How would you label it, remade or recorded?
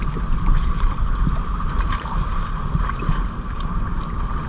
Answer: remade